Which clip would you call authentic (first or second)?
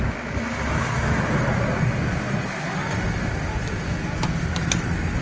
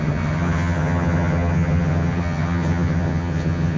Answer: first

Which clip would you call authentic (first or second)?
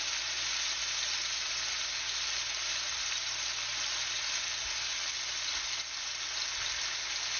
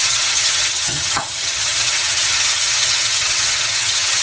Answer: first